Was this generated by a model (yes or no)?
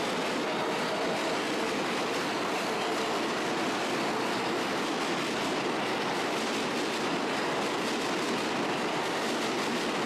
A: no